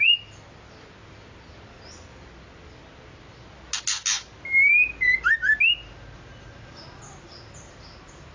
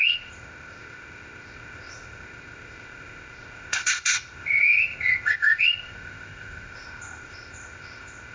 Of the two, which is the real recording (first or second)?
first